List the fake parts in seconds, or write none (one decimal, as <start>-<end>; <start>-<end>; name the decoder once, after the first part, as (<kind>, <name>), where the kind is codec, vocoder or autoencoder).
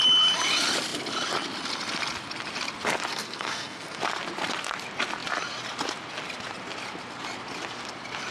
3.1-4.0 (codec, SNAC)